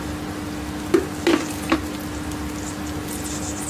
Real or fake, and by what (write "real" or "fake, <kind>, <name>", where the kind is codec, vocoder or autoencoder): real